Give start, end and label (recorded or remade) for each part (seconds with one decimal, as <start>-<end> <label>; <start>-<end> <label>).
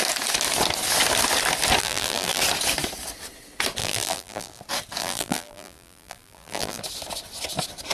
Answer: 0.0-1.8 recorded; 1.8-2.4 remade; 2.4-3.8 recorded; 3.8-4.6 remade; 4.6-5.0 recorded; 5.0-6.8 remade; 6.8-7.9 recorded